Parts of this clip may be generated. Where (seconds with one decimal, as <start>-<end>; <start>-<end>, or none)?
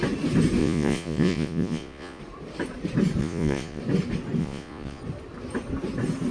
0.6-2.2; 3.2-3.8; 4.4-5.0